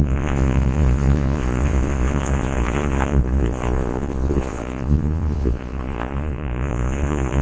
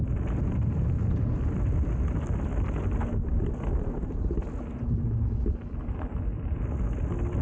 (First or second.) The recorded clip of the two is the second